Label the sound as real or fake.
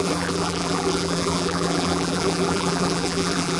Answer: fake